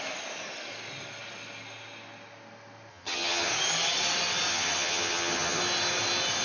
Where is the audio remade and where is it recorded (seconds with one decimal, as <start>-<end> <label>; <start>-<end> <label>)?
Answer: 0.0-2.9 recorded; 2.9-3.5 remade; 3.5-4.5 recorded; 4.5-5.6 remade; 5.6-6.4 recorded